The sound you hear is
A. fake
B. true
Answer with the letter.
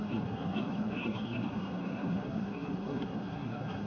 A